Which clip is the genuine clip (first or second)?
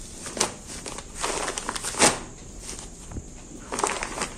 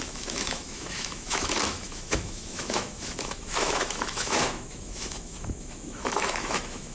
first